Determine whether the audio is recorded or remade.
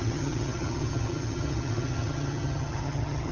remade